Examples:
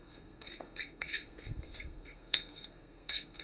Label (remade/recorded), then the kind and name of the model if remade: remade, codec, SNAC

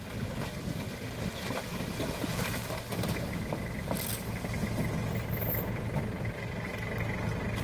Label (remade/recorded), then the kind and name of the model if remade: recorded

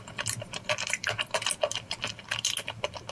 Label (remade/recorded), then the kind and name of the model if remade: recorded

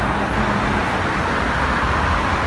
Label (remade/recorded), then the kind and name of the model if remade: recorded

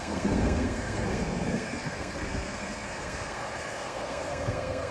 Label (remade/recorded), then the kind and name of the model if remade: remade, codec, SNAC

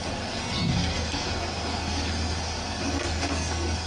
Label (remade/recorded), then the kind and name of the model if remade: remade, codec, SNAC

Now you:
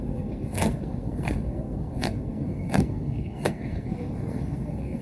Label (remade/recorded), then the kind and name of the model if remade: remade, codec, SNAC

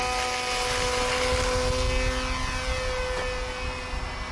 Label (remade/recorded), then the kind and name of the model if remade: recorded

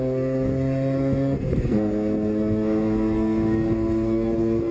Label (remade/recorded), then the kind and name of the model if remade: remade, codec, SNAC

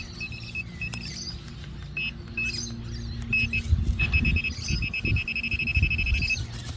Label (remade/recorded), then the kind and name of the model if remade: recorded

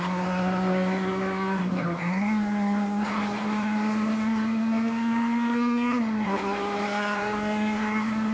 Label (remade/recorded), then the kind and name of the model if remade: remade, codec, SNAC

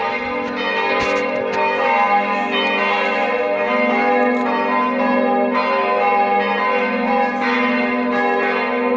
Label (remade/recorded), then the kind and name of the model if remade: recorded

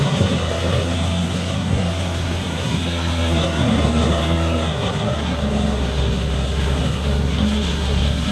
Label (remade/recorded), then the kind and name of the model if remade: remade, codec, SNAC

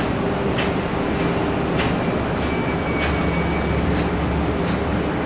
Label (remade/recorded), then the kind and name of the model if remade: recorded